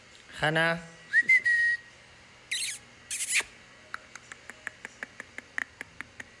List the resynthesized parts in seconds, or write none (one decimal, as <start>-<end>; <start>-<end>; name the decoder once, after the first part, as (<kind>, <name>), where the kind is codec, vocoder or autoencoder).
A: none